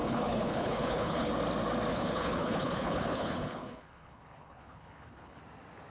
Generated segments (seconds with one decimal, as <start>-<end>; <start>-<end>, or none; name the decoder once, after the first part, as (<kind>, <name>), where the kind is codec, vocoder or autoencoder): 0.0-1.3 (codec, HILCodec); 1.9-5.4